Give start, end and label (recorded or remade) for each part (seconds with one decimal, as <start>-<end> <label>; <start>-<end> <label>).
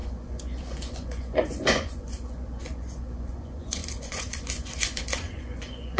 0.0-6.0 remade